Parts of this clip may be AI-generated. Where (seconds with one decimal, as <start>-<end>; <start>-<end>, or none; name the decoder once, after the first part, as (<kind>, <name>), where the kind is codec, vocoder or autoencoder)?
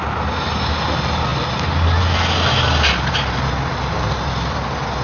none